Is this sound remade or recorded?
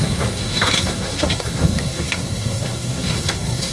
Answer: remade